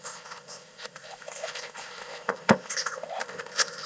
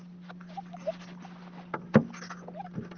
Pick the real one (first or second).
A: second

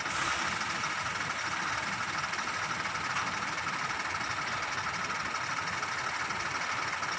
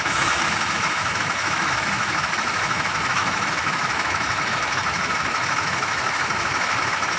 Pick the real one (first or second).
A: first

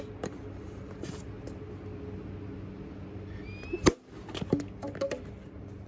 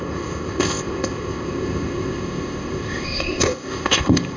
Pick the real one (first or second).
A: first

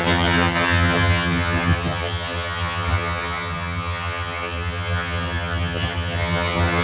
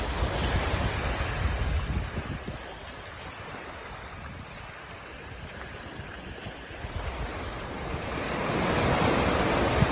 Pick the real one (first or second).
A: second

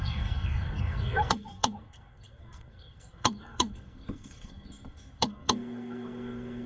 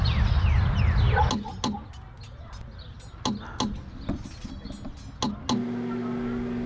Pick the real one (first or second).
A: second